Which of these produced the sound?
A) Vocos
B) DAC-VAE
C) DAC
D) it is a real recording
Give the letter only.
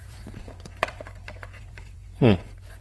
A